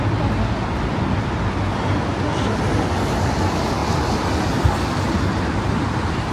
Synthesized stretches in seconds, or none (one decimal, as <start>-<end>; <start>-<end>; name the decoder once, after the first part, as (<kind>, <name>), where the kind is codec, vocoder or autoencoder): none